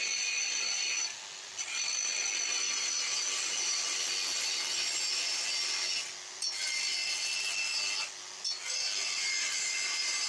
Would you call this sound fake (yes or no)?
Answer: no